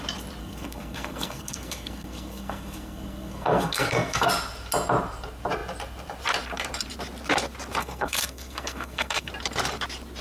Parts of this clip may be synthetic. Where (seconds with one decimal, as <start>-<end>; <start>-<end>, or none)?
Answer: 0.4-4.3; 7.8-9.3